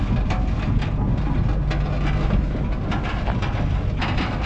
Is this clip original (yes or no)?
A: yes